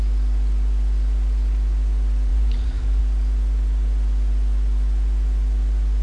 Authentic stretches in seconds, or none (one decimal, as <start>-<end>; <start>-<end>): 0.0-2.3; 3.0-6.0